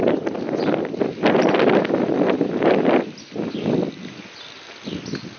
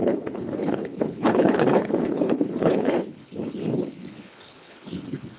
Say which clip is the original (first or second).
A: first